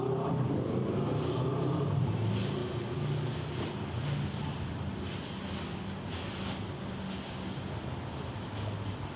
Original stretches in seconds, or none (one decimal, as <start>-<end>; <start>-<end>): 0.0-9.2